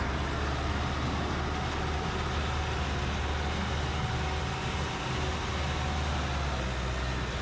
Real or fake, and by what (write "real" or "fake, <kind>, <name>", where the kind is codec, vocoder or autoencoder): real